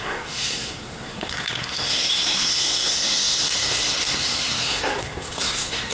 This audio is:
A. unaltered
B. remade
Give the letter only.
B